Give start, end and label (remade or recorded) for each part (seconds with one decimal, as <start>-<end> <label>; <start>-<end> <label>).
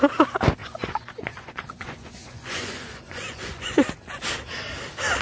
0.0-0.6 recorded; 0.6-3.7 remade; 3.7-5.2 recorded